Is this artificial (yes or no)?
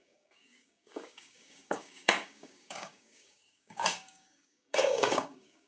yes